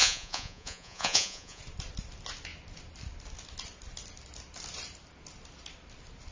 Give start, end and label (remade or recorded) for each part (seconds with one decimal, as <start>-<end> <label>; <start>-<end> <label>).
0.0-1.6 remade; 1.6-6.3 recorded